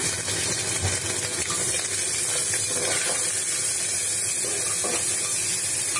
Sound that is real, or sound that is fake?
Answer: real